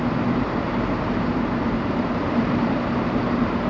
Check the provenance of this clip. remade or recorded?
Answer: remade